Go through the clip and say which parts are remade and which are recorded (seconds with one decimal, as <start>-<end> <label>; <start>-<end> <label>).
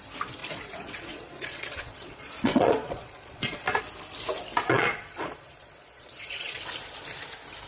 0.0-0.4 recorded; 0.4-3.8 remade; 3.8-4.7 recorded; 4.7-6.6 remade; 6.6-7.7 recorded